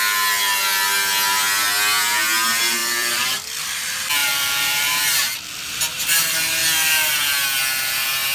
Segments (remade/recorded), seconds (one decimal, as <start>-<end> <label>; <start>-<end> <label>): 0.0-2.8 recorded; 2.8-3.6 remade; 3.6-4.2 recorded; 4.2-5.0 remade; 5.0-8.3 recorded